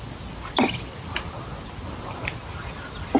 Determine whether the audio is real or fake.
real